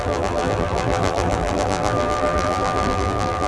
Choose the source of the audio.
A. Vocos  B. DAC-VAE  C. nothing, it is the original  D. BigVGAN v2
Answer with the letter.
D